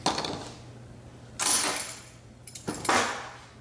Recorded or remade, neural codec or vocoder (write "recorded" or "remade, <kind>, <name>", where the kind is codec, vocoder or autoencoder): recorded